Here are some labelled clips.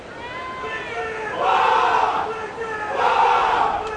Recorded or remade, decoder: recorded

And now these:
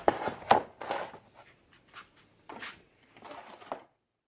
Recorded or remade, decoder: recorded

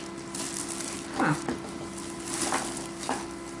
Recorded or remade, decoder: recorded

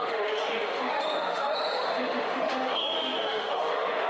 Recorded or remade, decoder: remade, autoencoder, DAC-VAE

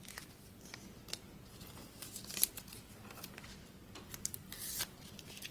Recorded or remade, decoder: recorded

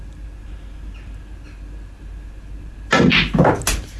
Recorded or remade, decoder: recorded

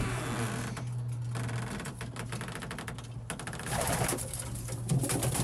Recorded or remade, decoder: recorded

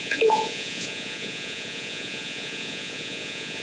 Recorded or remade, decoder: remade, vocoder, Vocos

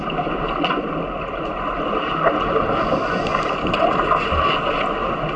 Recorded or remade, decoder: recorded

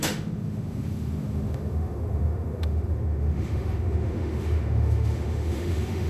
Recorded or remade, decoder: remade, autoencoder, DAC-VAE